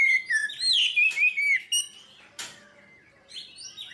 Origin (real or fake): real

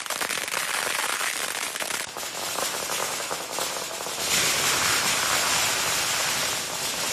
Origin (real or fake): real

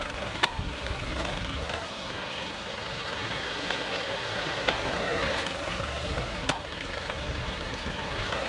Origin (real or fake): fake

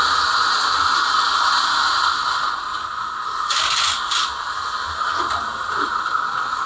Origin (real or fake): real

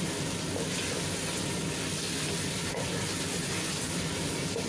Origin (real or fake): real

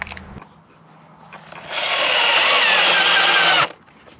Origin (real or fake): real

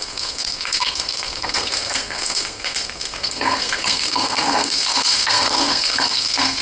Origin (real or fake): fake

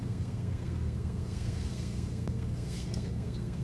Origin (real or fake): fake